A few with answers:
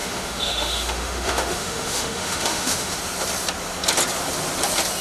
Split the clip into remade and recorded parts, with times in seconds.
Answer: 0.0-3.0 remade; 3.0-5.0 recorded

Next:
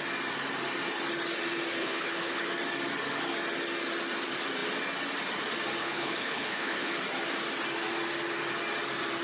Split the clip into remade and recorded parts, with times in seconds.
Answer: 0.0-1.8 recorded; 1.8-2.4 remade; 2.4-5.8 recorded; 5.8-6.9 remade; 6.9-9.2 recorded

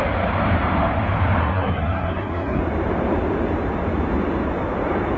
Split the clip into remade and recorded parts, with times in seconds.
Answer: 0.0-1.4 recorded; 1.4-2.6 remade; 2.6-5.2 recorded

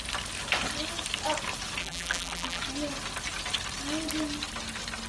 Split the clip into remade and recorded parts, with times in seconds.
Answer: 0.0-1.8 recorded; 1.8-2.6 remade; 2.6-5.1 recorded

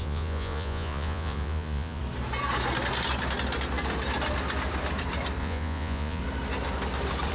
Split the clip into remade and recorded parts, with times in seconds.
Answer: 0.0-2.0 remade; 2.0-5.4 recorded; 5.4-6.2 remade; 6.2-7.3 recorded

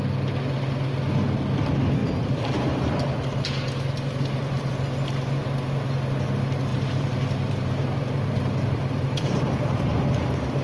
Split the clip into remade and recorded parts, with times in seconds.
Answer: 0.0-2.0 recorded; 2.0-4.7 remade; 4.7-6.7 recorded; 6.7-10.0 remade; 10.0-10.6 recorded

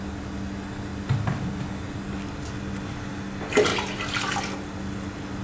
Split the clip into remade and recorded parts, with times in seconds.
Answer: 0.0-5.4 recorded

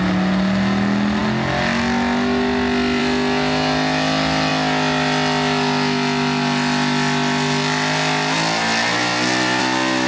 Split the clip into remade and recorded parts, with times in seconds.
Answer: 0.0-10.1 recorded